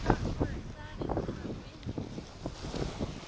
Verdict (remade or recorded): recorded